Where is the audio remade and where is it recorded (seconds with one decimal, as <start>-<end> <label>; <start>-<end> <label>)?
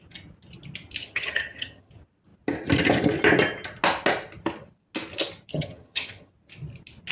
0.0-1.0 recorded; 1.0-1.9 remade; 1.9-5.5 recorded; 5.5-6.3 remade; 6.3-7.1 recorded